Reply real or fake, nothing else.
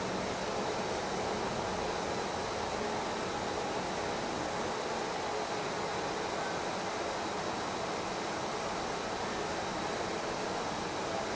real